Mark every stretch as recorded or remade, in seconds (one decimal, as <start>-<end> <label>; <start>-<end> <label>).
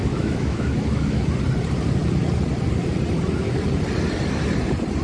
0.0-1.3 remade; 1.3-5.0 recorded